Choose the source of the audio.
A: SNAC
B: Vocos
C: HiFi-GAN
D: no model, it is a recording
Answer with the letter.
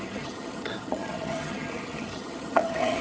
C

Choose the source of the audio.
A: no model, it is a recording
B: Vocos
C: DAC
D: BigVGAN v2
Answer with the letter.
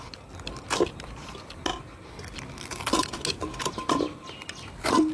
A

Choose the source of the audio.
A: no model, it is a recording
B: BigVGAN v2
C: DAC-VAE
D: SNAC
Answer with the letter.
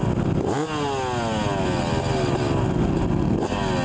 A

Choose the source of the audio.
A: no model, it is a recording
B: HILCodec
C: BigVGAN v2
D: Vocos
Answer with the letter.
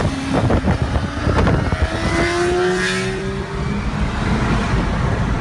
A